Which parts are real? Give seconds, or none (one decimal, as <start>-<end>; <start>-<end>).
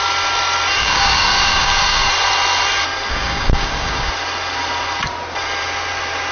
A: 0.0-0.8; 2.1-3.1; 4.1-6.3